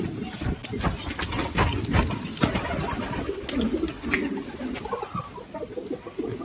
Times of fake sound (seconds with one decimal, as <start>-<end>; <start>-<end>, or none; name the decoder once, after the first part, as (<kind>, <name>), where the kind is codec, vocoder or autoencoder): none